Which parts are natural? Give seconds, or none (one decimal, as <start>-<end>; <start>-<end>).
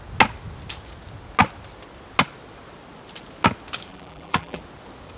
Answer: 0.0-3.9; 4.6-5.2